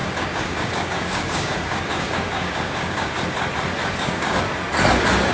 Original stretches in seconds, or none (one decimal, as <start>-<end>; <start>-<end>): 3.2-3.8; 4.4-5.3

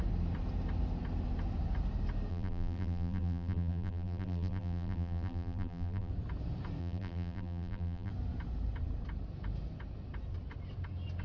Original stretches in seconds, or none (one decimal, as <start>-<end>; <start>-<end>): 0.0-2.3; 6.1-6.8; 8.1-11.2

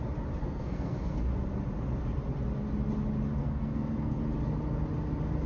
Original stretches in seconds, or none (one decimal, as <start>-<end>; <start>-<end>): 0.0-0.4; 1.3-3.4; 4.2-5.5